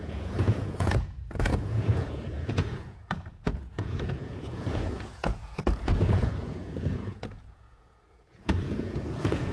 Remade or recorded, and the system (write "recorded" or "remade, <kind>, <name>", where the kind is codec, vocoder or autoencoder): remade, vocoder, Vocos